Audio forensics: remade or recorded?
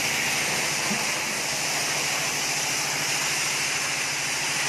recorded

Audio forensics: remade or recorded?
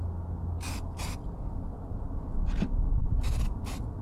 recorded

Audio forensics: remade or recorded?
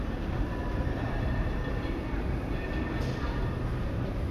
remade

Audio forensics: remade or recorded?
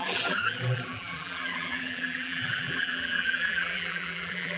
remade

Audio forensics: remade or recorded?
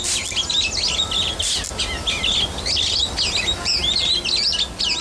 recorded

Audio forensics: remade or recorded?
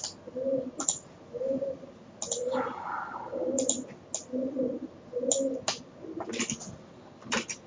recorded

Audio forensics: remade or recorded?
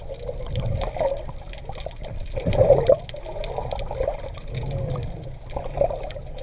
recorded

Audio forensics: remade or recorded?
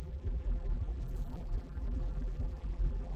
remade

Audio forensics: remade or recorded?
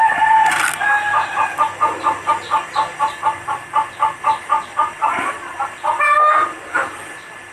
recorded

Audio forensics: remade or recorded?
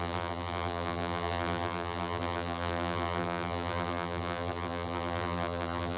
remade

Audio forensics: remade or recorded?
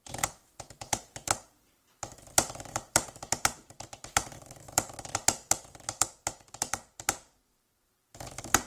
remade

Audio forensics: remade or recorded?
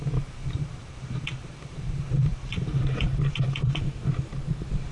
remade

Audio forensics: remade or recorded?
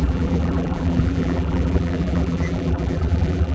remade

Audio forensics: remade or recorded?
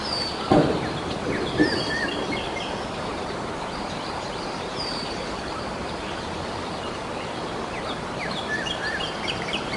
remade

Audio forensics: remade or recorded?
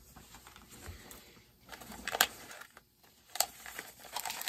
remade